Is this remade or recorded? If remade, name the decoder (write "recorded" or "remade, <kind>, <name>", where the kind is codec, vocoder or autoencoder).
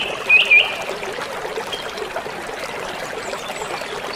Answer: recorded